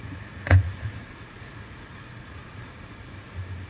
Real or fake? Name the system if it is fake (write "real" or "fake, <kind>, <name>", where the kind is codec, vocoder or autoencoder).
fake, vocoder, Vocos